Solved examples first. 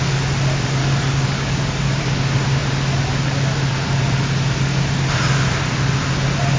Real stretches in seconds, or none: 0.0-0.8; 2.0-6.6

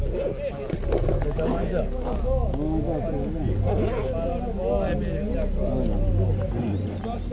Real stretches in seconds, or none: 0.0-1.1; 3.0-7.3

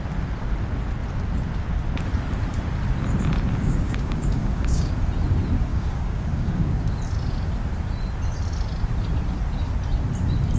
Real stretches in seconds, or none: 0.0-3.5; 4.9-5.7; 6.9-10.6

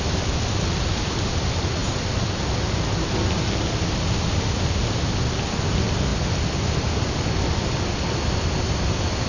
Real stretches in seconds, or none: 0.0-9.3

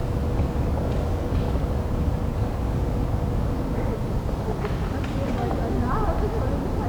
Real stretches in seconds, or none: 4.5-6.9